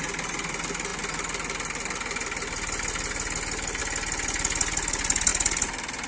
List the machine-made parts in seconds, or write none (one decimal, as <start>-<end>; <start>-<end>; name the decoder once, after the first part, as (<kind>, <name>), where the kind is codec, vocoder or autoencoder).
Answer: 5.3-6.1 (vocoder, BigVGAN v2)